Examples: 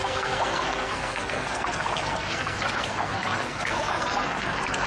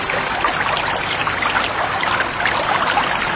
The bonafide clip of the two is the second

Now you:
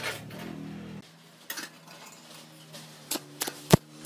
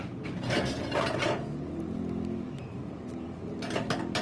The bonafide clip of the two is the first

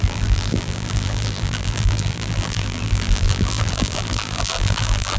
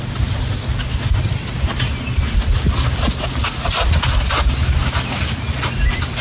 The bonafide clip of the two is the second